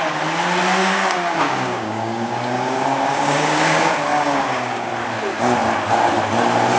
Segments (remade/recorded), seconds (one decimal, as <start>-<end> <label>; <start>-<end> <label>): 0.0-0.8 recorded; 0.8-4.9 remade; 4.9-6.8 recorded